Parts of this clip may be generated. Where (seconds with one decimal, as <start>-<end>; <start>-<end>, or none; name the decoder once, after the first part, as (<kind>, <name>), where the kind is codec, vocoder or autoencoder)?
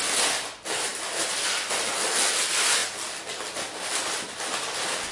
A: none